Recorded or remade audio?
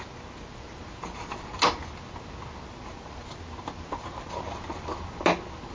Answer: recorded